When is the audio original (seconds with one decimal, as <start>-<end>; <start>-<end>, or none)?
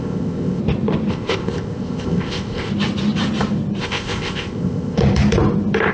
0.6-1.1; 2.7-3.8; 5.0-5.9